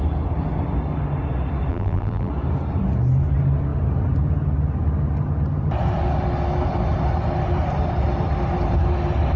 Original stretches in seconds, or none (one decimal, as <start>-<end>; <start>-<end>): 0.0-1.7; 2.3-9.4